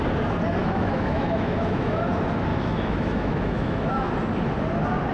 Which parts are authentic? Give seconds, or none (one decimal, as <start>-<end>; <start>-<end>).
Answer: 0.0-0.6; 2.0-2.5; 4.1-5.1